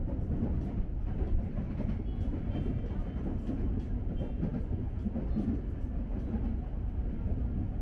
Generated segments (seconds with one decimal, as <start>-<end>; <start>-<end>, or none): 0.0-2.8